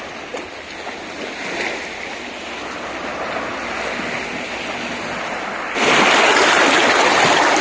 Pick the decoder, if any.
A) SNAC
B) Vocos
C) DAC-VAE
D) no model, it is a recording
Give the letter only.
D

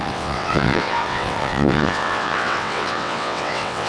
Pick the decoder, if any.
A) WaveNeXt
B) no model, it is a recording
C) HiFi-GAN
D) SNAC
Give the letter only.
A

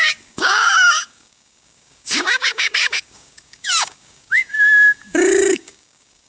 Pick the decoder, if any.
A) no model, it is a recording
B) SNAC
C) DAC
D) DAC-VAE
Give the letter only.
C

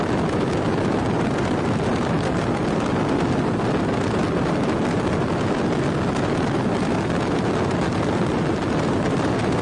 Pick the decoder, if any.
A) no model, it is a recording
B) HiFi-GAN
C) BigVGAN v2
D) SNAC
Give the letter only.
A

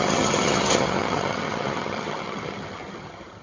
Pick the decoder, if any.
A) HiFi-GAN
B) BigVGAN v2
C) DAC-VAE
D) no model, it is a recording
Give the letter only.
A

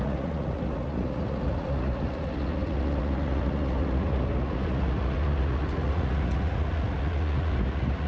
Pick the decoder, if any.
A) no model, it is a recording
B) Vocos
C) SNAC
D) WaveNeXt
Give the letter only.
B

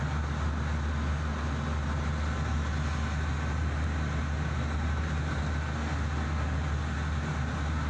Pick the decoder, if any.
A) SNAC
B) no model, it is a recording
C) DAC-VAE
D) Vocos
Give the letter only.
B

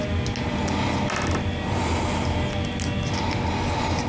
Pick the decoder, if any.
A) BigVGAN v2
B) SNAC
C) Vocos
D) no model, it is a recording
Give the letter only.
D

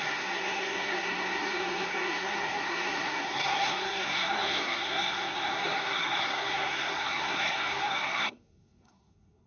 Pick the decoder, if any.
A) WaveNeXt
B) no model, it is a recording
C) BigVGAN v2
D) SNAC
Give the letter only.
D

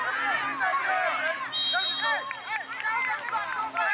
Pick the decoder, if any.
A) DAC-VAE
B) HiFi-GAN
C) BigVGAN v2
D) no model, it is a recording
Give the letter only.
D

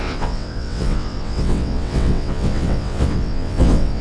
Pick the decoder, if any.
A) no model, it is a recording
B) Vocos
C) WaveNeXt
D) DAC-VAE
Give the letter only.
C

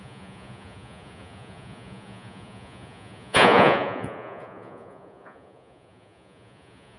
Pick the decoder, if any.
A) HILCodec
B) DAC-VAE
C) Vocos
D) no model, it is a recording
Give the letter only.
C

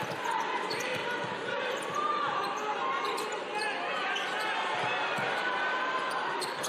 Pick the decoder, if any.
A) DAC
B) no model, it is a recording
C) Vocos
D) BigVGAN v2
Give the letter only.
B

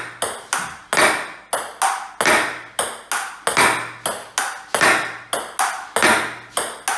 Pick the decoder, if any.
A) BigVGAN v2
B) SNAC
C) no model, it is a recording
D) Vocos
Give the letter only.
C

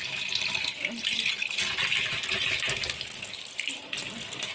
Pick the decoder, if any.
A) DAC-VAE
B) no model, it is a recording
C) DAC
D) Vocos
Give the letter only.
B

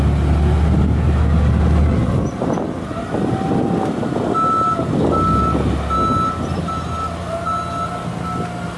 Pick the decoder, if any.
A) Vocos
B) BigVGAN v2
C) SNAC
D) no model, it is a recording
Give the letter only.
D